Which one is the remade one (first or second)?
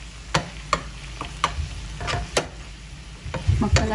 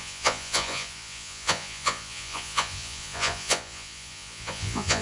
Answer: second